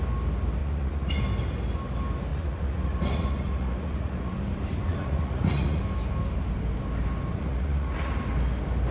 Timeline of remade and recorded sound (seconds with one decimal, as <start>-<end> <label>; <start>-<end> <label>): 0.0-0.6 recorded; 0.6-1.2 remade; 1.2-2.3 recorded; 2.3-4.4 remade; 4.4-4.9 recorded; 4.9-5.8 remade; 5.8-7.3 recorded; 7.3-8.1 remade; 8.1-8.9 recorded